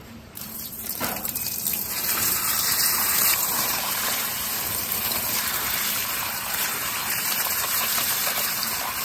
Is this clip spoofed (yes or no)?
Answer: yes